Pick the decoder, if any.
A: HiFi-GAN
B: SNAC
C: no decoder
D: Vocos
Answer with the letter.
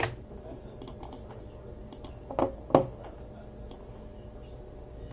C